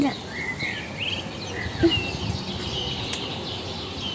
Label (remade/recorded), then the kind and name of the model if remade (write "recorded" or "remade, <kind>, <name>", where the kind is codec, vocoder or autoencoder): recorded